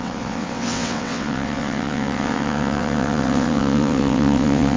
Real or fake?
fake